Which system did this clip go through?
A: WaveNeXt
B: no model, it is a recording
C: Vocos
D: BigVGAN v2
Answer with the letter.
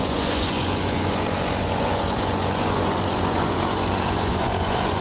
C